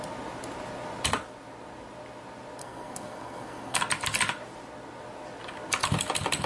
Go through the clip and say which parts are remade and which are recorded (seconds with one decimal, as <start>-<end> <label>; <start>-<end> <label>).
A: 0.0-2.6 recorded; 2.6-3.8 remade; 3.8-6.5 recorded